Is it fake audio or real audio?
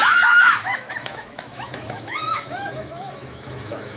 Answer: fake